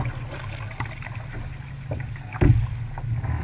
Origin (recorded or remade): recorded